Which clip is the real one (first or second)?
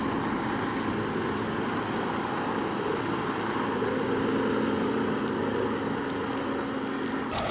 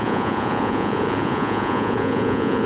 first